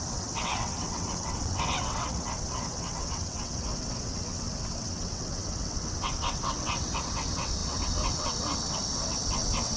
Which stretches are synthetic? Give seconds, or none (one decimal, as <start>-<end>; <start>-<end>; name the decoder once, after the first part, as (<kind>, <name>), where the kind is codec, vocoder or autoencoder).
0.0-9.8 (vocoder, WaveNeXt)